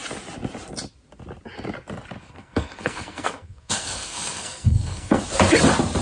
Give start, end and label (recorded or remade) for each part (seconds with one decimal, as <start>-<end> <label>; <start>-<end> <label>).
0.0-2.2 recorded; 2.2-5.2 remade; 5.2-6.0 recorded